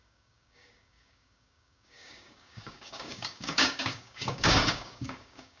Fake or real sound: fake